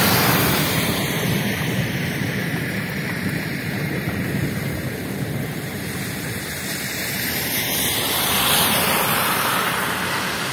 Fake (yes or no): yes